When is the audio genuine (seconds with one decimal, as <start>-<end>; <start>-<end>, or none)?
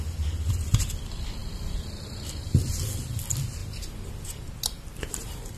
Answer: 0.0-3.6